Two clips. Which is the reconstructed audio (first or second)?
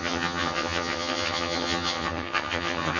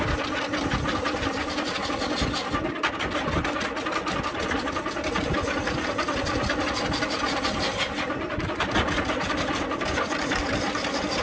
first